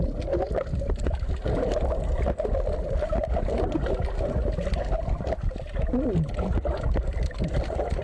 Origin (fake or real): real